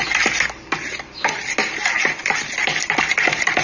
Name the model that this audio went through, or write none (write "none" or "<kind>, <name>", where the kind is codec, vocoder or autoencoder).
none